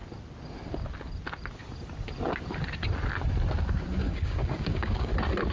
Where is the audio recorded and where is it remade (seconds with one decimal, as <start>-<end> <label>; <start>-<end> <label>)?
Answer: 0.0-4.0 recorded; 4.0-5.1 remade; 5.1-5.5 recorded